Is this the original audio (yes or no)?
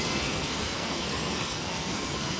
no